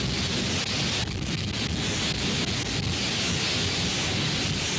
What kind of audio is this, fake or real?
real